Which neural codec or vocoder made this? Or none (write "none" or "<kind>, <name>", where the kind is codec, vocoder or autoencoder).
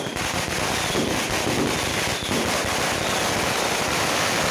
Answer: none